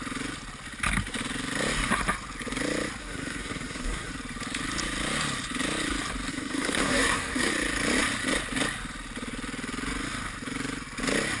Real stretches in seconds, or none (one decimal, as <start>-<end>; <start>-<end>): 0.0-3.0; 4.1-6.3; 7.5-11.4